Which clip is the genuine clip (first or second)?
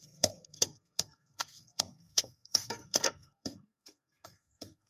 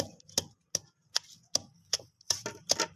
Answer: second